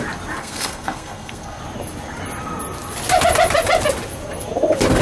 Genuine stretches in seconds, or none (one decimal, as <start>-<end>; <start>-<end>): 0.0-0.4; 1.6-5.0